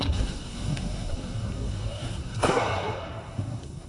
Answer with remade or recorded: remade